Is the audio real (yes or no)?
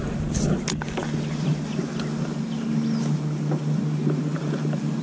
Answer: yes